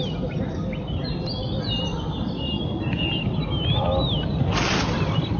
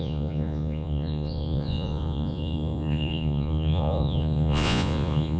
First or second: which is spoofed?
second